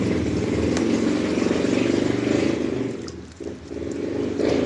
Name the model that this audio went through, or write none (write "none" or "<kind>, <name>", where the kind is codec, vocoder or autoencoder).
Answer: none